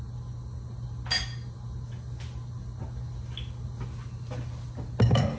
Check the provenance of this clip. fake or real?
real